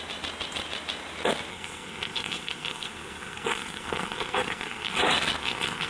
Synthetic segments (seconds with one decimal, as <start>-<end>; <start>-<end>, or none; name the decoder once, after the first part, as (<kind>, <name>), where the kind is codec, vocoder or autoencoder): 1.5-5.0 (codec, SNAC); 5.4-5.9